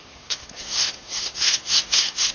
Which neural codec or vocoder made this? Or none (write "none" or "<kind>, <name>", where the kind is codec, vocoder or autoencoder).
codec, SNAC